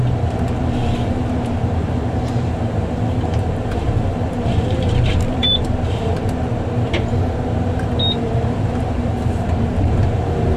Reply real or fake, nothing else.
fake